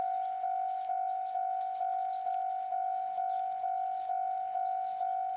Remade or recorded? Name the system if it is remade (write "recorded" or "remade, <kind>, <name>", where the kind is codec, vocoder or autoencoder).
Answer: recorded